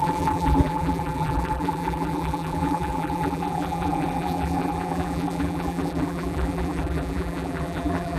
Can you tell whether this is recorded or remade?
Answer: remade